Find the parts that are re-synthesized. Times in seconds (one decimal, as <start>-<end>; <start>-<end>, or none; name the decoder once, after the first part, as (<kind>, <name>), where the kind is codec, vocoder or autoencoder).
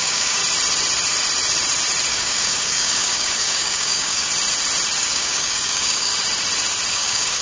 0.0-0.4 (codec, DAC); 2.1-4.3; 5.0-6.1; 6.9-7.4